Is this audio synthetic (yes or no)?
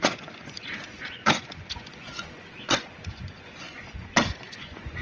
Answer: yes